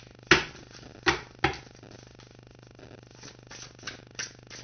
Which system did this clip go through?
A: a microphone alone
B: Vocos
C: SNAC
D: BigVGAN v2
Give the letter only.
A